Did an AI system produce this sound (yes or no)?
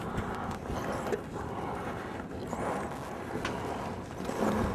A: no